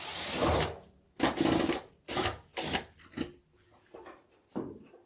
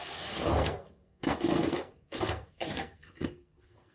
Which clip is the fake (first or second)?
second